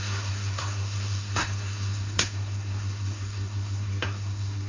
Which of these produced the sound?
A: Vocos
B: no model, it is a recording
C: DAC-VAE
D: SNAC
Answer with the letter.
D